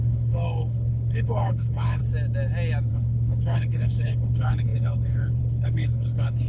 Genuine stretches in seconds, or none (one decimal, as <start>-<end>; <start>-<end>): 2.0-2.9